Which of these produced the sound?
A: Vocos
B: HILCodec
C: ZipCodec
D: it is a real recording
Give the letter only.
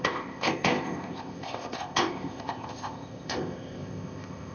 C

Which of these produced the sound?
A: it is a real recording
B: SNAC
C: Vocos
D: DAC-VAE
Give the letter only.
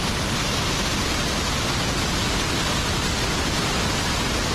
A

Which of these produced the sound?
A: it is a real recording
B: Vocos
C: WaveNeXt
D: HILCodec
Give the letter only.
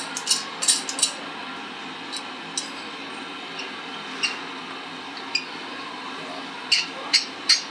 A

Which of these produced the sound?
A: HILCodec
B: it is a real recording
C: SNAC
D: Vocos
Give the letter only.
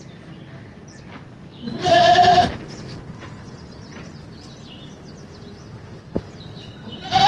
B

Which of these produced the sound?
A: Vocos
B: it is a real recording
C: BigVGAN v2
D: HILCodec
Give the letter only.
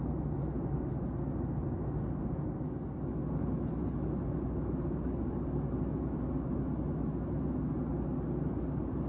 B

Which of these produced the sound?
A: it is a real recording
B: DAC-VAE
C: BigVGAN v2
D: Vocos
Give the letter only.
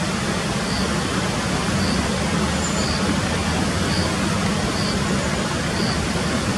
A